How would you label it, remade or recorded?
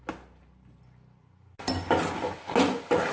recorded